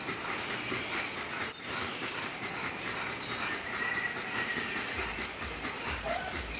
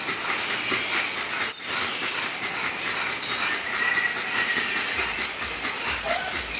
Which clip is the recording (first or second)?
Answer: second